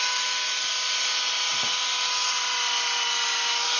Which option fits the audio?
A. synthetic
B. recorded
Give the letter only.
B